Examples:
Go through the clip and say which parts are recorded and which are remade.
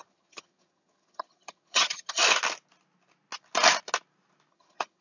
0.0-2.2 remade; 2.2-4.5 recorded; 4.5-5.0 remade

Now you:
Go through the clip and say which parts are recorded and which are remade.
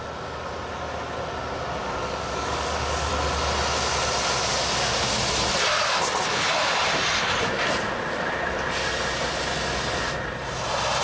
0.0-1.8 recorded; 1.8-3.1 remade; 3.1-11.0 recorded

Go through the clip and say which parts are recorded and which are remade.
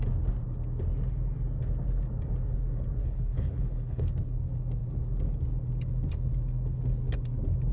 0.0-3.0 recorded; 3.0-4.1 remade; 4.1-7.7 recorded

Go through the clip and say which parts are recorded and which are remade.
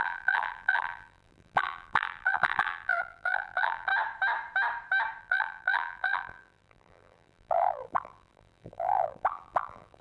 0.0-3.9 remade; 3.9-5.2 recorded; 5.2-10.0 remade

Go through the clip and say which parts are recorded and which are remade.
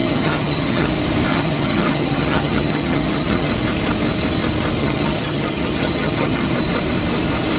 0.0-0.9 remade; 0.9-1.3 recorded; 1.3-3.5 remade; 3.5-4.8 recorded; 4.8-6.5 remade; 6.5-7.6 recorded